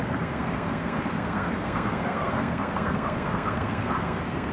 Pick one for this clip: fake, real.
fake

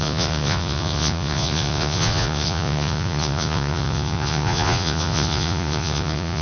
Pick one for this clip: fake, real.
fake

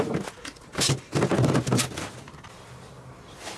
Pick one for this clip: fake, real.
real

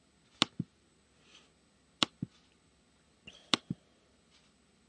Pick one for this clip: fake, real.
real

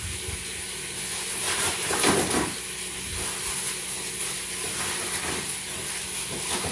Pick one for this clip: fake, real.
real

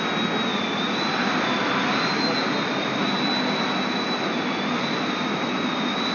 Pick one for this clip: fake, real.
real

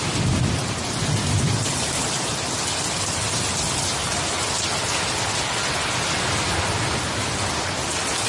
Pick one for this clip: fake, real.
real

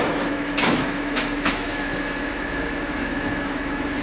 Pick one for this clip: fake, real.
fake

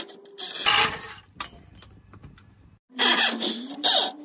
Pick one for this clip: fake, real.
real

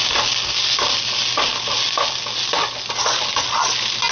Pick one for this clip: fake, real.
real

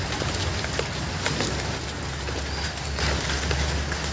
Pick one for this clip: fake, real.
real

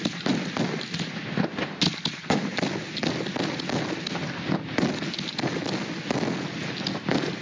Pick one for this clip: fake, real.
real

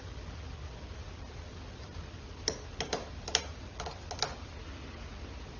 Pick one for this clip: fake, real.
real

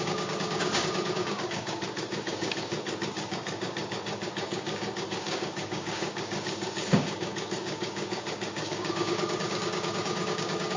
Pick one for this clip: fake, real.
fake